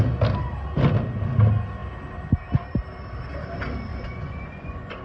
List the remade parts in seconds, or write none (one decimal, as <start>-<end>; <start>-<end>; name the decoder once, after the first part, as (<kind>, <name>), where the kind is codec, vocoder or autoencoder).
3.9-5.0 (vocoder, Vocos)